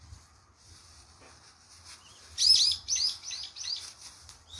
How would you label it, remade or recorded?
recorded